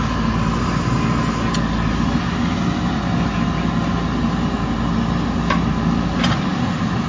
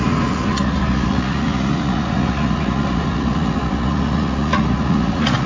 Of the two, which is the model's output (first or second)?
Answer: second